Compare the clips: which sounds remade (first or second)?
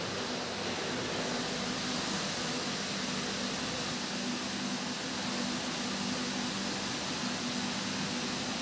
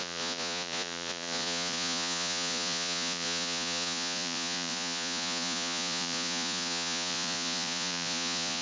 second